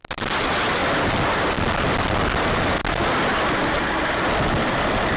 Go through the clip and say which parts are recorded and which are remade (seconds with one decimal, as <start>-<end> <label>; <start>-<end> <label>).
0.0-5.2 recorded